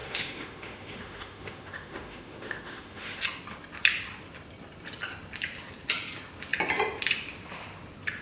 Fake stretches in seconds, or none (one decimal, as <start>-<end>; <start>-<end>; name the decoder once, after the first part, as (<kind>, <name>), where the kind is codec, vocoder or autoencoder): 0.0-3.2 (autoencoder, DAC-VAE)